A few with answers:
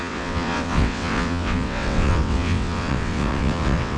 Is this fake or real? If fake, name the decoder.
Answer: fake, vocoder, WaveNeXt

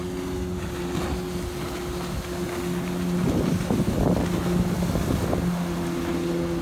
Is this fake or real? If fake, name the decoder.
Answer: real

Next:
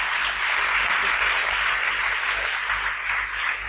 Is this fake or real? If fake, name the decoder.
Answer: real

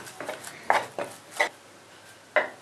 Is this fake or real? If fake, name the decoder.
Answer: real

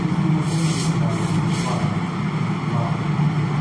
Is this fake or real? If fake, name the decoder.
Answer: real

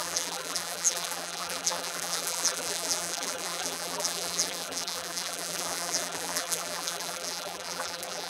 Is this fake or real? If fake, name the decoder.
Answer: fake, vocoder, BigVGAN v2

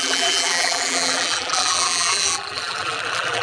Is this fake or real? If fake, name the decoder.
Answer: fake, vocoder, BigVGAN v2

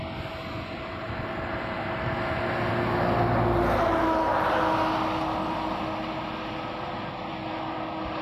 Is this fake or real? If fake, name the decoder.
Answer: real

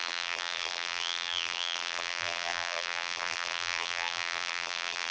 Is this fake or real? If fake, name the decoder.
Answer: fake, vocoder, BigVGAN v2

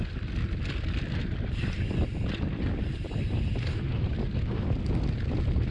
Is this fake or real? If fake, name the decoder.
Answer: real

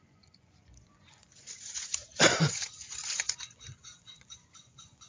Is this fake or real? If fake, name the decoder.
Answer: fake, vocoder, Vocos